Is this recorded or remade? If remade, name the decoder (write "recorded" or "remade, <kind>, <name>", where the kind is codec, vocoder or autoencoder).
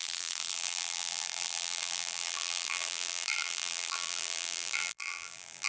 remade, vocoder, BigVGAN v2